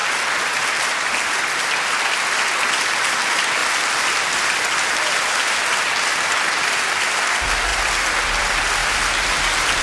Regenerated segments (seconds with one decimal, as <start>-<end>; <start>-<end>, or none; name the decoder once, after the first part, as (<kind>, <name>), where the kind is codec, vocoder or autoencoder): none